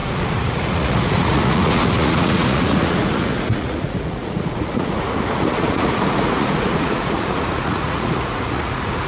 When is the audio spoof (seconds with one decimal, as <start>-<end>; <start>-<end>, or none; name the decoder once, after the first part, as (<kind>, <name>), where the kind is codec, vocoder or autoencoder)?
0.0-9.1 (vocoder, Vocos)